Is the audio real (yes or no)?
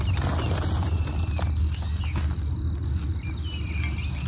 yes